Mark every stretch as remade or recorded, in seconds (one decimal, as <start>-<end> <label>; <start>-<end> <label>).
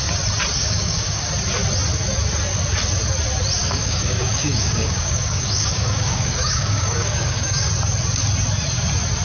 0.0-0.6 recorded; 0.6-1.3 remade; 1.3-3.6 recorded; 3.6-7.7 remade; 7.7-9.2 recorded